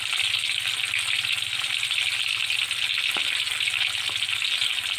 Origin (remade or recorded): recorded